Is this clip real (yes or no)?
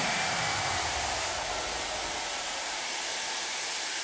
yes